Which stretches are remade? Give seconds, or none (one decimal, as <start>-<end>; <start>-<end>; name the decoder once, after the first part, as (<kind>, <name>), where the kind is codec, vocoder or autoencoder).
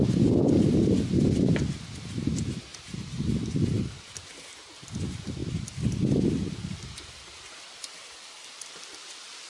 5.4-9.5 (vocoder, BigVGAN v2)